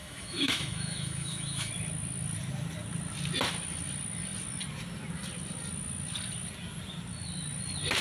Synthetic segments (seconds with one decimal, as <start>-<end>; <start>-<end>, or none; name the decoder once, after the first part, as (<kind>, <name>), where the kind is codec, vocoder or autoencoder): 0.0-1.7 (autoencoder, DAC-VAE)